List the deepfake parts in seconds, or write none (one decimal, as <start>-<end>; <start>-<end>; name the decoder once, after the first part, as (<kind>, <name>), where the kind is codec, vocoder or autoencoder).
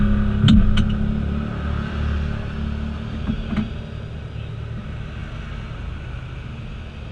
none